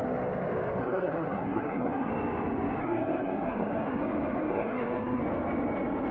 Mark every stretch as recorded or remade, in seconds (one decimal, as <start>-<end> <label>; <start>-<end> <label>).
0.0-0.8 recorded; 0.8-2.1 remade; 2.1-2.8 recorded; 2.8-4.0 remade; 4.0-4.5 recorded; 4.5-5.2 remade; 5.2-6.1 recorded